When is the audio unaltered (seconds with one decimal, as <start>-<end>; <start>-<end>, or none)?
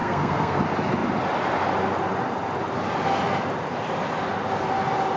0.6-5.2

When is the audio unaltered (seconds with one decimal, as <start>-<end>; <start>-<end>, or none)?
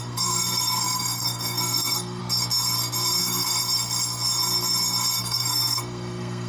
2.2-3.2; 3.6-5.2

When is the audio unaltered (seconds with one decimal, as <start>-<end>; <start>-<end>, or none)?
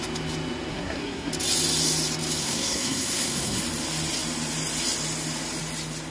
0.0-0.7; 1.3-2.4; 3.6-6.1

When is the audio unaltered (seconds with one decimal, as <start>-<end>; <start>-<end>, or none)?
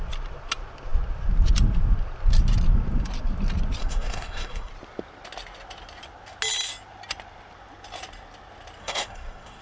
0.0-3.8; 4.7-8.8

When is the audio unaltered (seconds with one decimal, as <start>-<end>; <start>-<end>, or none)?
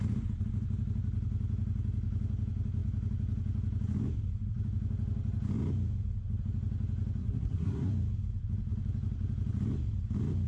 0.0-7.2; 7.9-10.5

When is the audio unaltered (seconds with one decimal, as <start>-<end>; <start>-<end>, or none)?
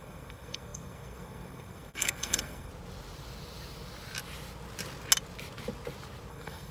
2.7-6.3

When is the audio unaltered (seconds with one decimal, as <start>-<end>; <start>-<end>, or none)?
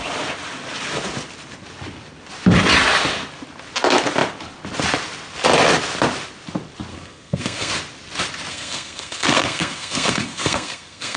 0.0-6.9; 7.7-8.5